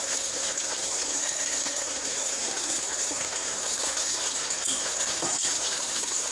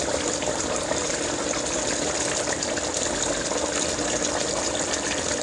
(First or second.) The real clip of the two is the second